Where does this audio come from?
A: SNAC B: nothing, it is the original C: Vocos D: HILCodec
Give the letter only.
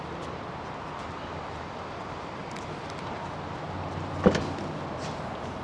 B